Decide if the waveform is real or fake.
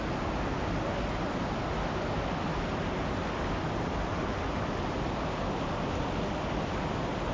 real